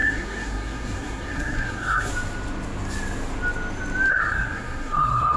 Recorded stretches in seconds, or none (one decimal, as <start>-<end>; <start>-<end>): 2.1-4.1